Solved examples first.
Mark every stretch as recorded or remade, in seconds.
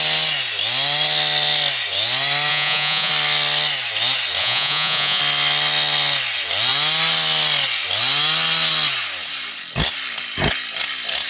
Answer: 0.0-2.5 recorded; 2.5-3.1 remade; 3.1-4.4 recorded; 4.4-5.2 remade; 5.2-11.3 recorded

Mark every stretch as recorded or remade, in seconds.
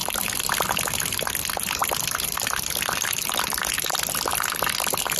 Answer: 0.0-0.6 remade; 0.6-1.8 recorded; 1.8-5.2 remade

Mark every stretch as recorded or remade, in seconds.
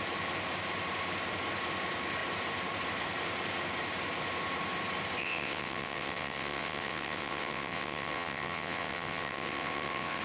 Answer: 0.0-5.2 recorded; 5.2-10.2 remade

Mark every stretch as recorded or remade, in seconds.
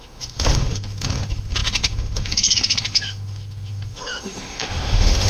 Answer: 0.0-5.3 remade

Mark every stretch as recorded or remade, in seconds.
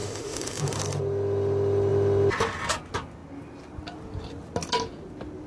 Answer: 0.0-0.8 remade; 0.8-5.5 recorded